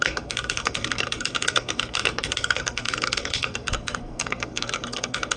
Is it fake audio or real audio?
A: fake